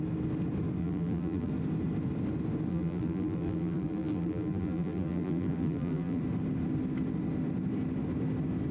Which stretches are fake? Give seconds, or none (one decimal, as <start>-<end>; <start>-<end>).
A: 0.8-1.5; 2.7-6.2